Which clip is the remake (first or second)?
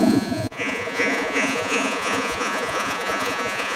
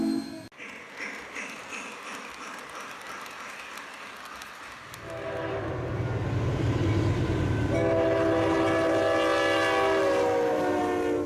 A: first